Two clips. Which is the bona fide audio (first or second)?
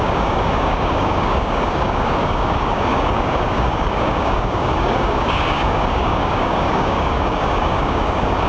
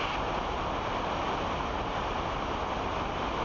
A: second